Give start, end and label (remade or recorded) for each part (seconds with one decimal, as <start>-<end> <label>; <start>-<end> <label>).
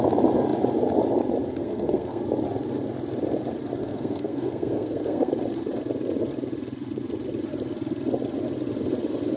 0.0-1.6 recorded; 1.6-2.2 remade; 2.2-3.8 recorded; 3.8-5.3 remade; 5.3-9.4 recorded